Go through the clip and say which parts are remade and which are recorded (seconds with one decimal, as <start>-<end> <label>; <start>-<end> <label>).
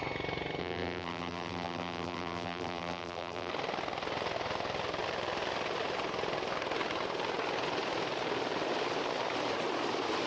0.0-0.6 recorded; 0.6-3.5 remade; 3.5-10.3 recorded